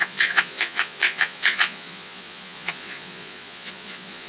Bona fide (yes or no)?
no